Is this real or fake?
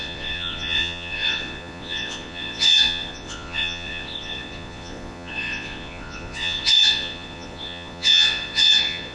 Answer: fake